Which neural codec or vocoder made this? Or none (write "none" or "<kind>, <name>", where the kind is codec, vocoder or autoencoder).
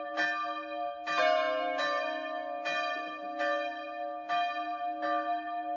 none